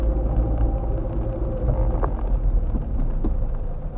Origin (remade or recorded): recorded